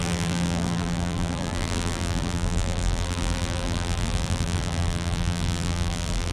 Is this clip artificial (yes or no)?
yes